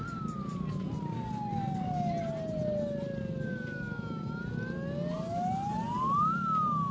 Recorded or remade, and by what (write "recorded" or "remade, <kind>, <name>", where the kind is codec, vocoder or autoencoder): recorded